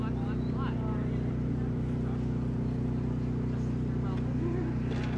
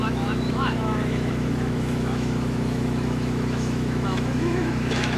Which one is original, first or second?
first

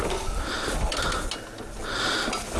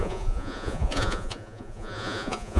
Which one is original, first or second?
first